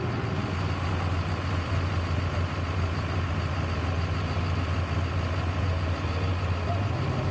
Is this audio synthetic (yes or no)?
no